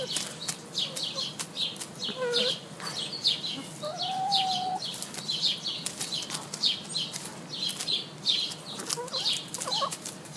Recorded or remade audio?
recorded